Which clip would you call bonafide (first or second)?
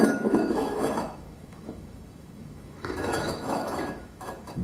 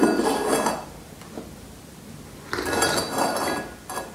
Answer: second